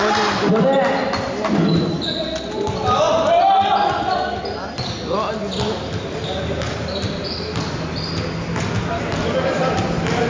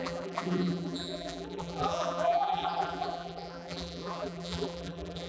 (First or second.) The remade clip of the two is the second